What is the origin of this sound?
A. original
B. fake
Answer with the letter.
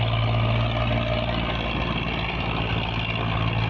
A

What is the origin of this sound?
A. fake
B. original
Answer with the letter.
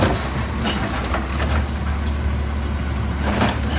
B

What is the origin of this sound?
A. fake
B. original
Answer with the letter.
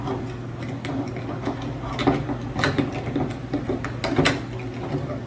B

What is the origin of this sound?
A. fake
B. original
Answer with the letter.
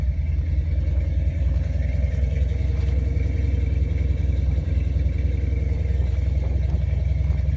B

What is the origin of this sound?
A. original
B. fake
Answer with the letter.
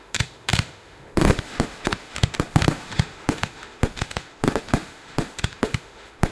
B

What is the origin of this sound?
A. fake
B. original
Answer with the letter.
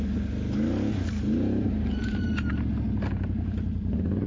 B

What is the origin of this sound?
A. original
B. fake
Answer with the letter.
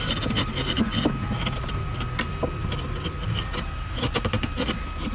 A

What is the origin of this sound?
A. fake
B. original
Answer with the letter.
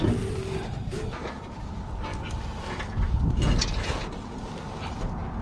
B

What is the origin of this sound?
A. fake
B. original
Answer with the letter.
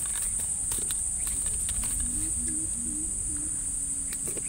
B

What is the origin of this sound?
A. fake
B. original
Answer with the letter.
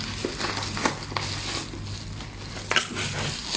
B